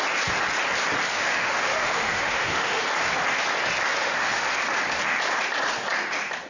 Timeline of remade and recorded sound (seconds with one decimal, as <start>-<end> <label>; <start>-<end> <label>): 0.0-1.1 recorded; 1.1-2.8 remade; 2.8-4.0 recorded; 4.0-4.5 remade; 4.5-6.5 recorded